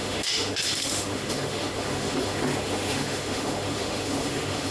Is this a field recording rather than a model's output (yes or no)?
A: no